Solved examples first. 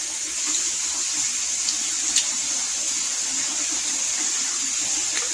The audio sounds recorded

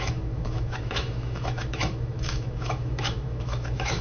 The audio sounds remade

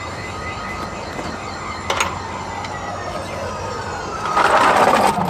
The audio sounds recorded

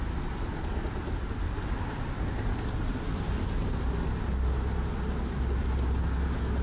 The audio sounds recorded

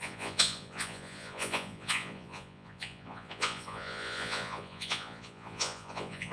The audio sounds remade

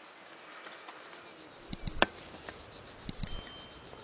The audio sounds recorded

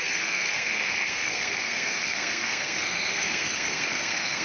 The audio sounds remade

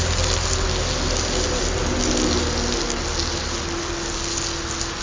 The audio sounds recorded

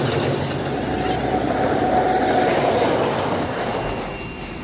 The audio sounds recorded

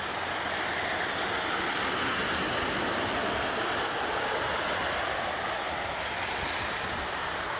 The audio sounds recorded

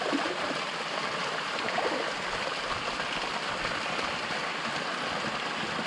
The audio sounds recorded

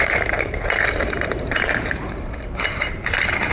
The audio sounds remade